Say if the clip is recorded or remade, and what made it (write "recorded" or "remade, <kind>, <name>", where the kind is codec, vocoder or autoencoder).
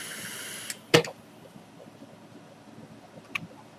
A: recorded